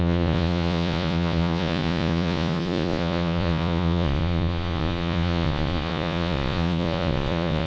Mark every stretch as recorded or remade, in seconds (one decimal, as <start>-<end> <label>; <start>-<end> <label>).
0.0-7.7 remade